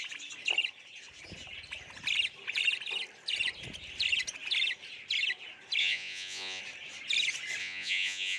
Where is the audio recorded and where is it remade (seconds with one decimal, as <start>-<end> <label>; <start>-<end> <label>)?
0.0-5.8 recorded; 5.8-6.6 remade; 6.6-7.6 recorded; 7.6-8.4 remade